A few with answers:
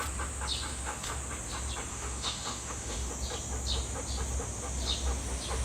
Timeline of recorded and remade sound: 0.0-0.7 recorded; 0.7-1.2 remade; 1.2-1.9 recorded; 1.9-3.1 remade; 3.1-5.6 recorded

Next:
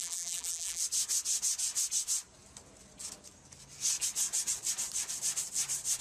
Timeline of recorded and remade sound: 0.0-0.8 remade; 0.8-6.0 recorded